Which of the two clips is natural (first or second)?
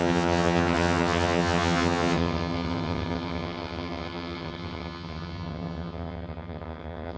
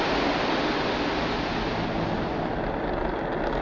second